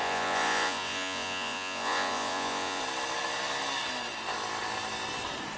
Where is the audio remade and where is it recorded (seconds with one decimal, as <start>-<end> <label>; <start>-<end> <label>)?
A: 0.0-2.8 remade; 2.8-5.6 recorded